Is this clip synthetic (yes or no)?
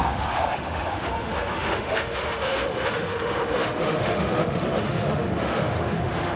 yes